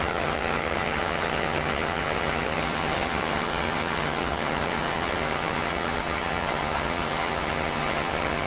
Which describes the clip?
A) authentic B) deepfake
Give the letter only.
B